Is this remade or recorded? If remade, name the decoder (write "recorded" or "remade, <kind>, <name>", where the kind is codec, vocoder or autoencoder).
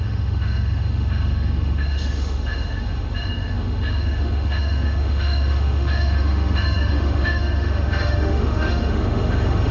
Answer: remade, autoencoder, DAC-VAE